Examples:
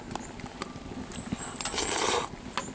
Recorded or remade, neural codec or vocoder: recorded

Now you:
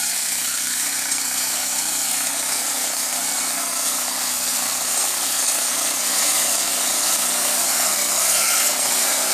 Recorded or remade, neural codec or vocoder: remade, codec, SNAC